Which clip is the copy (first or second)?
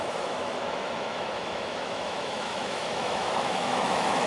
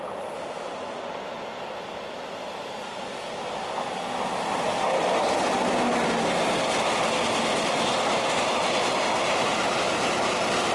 first